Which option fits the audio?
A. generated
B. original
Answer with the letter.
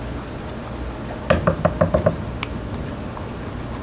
B